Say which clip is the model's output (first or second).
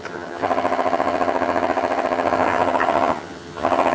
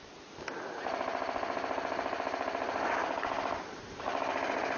first